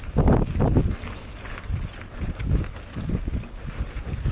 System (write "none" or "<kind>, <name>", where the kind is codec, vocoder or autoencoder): none